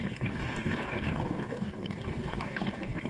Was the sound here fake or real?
fake